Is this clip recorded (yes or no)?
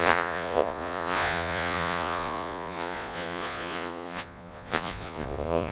no